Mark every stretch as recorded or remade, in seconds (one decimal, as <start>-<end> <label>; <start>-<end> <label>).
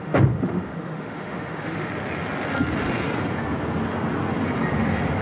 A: 0.0-1.9 remade; 1.9-5.2 recorded